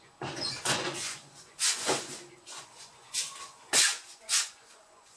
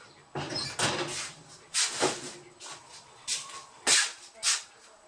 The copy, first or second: first